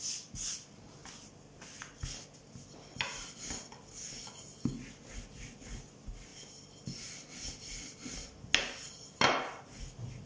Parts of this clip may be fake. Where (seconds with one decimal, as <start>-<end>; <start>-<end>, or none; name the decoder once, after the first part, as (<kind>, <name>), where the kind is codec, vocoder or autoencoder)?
none